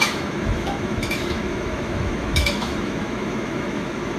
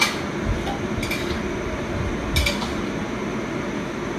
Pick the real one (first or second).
second